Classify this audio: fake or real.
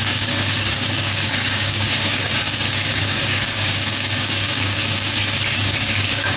fake